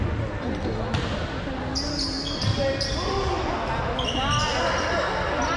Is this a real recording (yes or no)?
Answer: yes